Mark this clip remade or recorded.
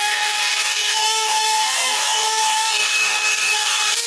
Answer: remade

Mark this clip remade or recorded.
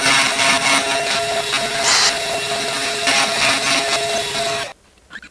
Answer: recorded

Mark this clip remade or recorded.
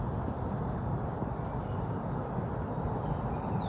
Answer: recorded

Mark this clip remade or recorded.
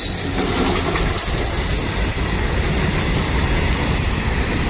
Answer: recorded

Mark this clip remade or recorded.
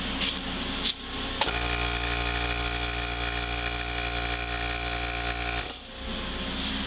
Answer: recorded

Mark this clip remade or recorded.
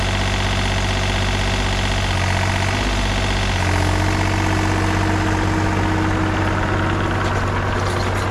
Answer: recorded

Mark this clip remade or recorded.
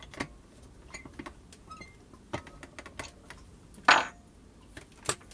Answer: recorded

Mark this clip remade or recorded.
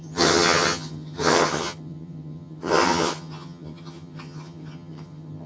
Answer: remade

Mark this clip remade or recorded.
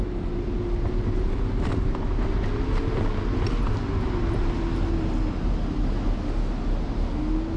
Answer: recorded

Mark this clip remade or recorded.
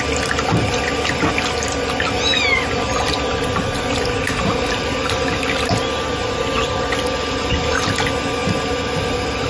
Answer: recorded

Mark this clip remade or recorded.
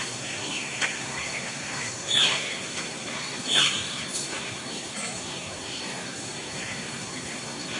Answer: remade